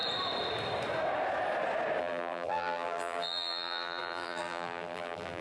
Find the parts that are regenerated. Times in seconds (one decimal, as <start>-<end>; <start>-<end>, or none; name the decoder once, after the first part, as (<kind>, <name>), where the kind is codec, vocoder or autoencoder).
2.0-5.4 (vocoder, BigVGAN v2)